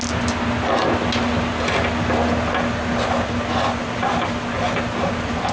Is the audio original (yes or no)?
yes